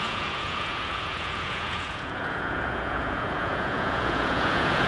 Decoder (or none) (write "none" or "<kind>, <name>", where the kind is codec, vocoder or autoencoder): vocoder, Vocos